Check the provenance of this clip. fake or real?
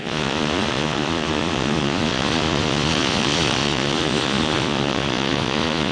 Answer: fake